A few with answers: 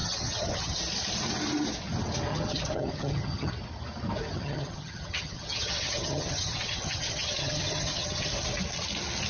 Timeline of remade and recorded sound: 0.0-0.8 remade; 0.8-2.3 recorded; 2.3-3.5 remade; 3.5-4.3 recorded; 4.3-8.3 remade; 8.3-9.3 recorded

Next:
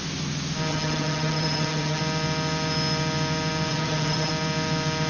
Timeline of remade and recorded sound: 0.0-0.7 recorded; 0.7-2.0 remade; 2.0-3.7 recorded; 3.7-4.3 remade; 4.3-5.1 recorded

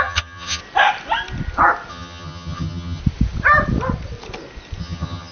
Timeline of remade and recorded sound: 0.0-0.6 remade; 0.6-1.9 recorded; 1.9-3.0 remade; 3.0-4.8 recorded; 4.8-5.3 remade

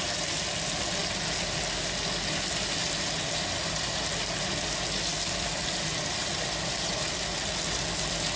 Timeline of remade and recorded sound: 0.0-8.4 recorded

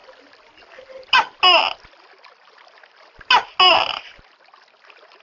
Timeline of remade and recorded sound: 0.0-5.2 recorded